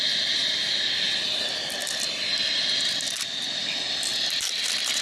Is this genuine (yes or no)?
yes